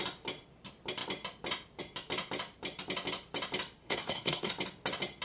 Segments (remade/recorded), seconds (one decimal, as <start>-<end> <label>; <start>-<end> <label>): 0.0-3.8 recorded; 3.8-4.5 remade; 4.5-5.2 recorded